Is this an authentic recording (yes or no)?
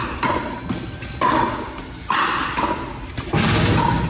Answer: yes